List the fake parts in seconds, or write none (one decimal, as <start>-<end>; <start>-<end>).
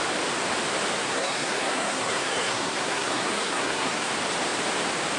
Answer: 1.0-4.1